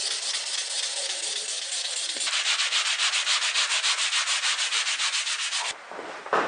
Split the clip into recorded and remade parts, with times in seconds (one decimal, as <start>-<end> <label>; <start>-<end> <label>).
0.0-6.5 recorded